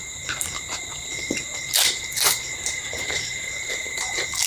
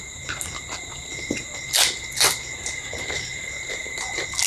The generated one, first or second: first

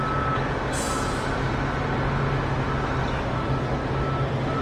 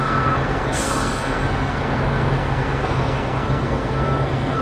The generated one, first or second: second